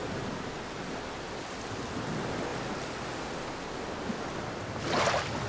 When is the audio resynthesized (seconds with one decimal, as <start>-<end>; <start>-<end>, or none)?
none